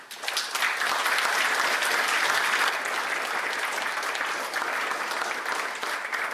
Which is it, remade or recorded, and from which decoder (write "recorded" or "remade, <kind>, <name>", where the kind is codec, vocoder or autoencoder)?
recorded